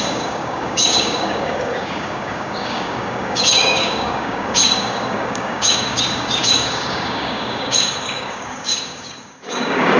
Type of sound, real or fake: fake